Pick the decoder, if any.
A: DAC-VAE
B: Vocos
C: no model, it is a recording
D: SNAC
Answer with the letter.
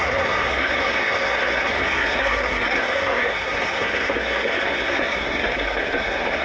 D